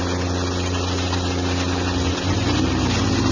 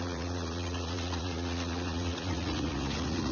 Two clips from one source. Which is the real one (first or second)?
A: first